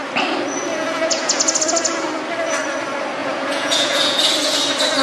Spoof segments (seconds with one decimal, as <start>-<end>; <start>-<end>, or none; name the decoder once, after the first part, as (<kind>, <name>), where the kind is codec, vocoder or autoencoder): 0.7-1.4 (vocoder, Vocos); 3.2-4.2